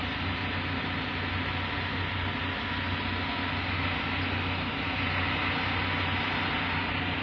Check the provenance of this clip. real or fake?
real